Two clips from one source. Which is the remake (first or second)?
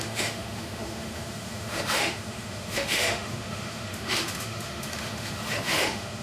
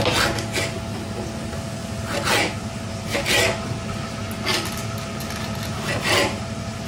first